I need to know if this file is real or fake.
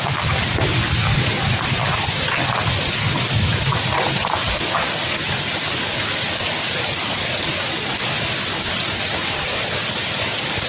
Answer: real